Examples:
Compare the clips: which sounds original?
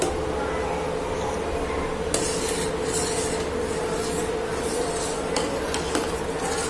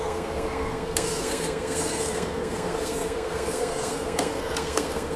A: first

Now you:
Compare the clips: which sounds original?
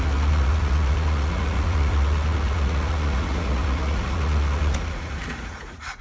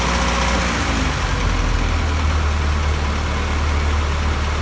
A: second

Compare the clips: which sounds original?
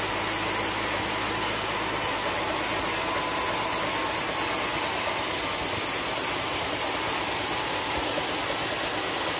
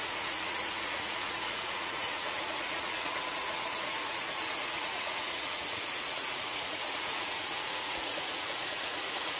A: first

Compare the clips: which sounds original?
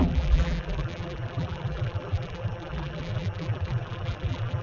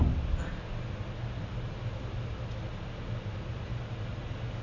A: second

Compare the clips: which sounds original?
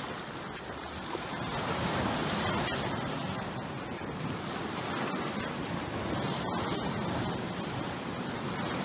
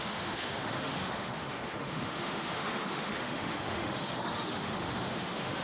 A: first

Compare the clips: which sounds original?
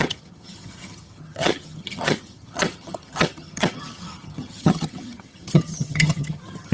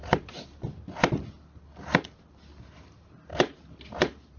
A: second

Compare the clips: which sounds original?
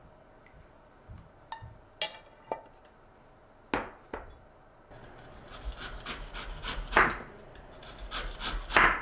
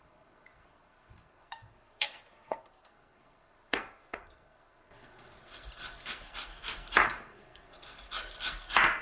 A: first